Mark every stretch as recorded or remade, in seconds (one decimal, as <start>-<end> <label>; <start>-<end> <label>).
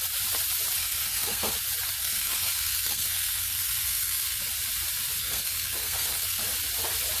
0.0-0.8 recorded; 0.8-1.5 remade; 1.5-2.0 recorded; 2.0-4.4 remade; 4.4-5.2 recorded; 5.2-6.4 remade; 6.4-7.2 recorded